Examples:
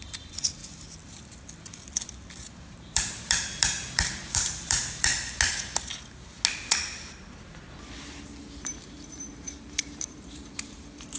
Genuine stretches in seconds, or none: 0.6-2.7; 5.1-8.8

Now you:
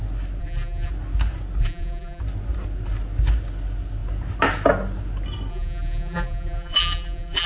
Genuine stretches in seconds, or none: 0.0-0.4; 0.9-1.6; 2.2-5.5

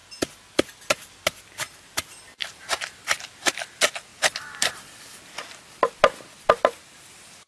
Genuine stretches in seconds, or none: 0.0-2.4; 3.5-4.1; 4.9-7.5

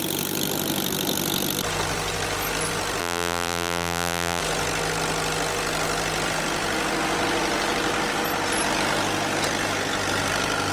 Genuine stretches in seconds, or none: 0.0-3.0; 4.4-10.7

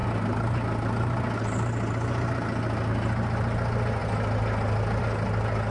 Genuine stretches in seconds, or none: 0.0-5.7

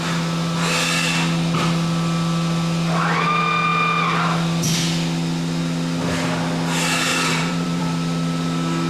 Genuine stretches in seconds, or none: 0.0-7.1; 7.8-8.9